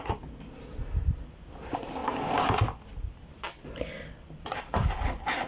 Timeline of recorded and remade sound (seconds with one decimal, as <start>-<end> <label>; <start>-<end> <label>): 0.0-5.5 recorded